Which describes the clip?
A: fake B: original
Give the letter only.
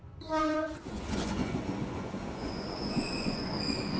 A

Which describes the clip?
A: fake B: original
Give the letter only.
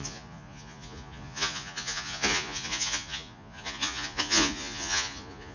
A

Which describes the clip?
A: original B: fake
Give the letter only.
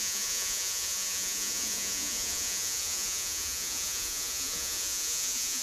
B